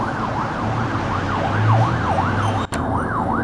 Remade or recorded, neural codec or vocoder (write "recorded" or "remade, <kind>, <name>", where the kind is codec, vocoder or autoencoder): recorded